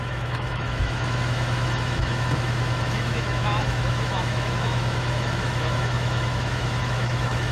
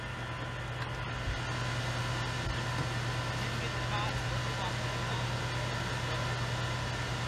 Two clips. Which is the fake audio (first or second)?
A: first